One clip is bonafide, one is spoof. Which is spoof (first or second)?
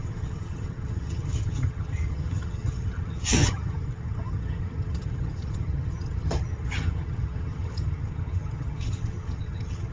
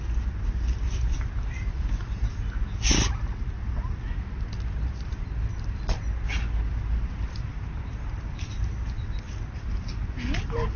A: first